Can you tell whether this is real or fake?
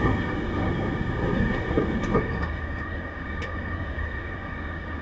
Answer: fake